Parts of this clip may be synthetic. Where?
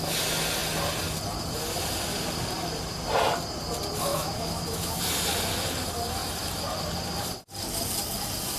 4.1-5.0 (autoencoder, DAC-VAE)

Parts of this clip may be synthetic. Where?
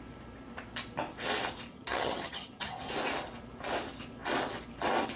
1.7-2.9 (vocoder, HiFi-GAN)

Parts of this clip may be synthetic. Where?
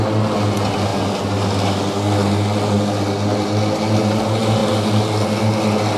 none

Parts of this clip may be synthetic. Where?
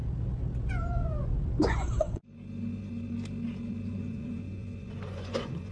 0.7-2.2 (vocoder, Vocos); 4.0-5.7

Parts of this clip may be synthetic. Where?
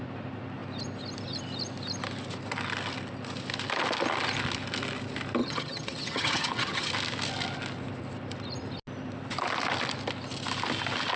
5.4-6.9 (vocoder, HiFi-GAN)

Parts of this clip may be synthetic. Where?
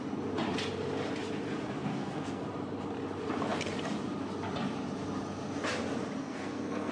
1.9-2.4 (codec, SNAC); 6.2-6.9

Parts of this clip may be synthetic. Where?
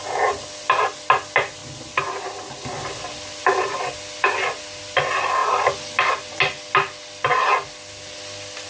1.6-3.4 (vocoder, BigVGAN v2); 5.4-6.1